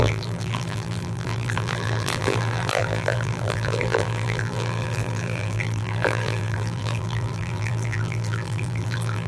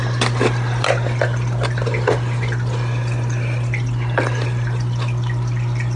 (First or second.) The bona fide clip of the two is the second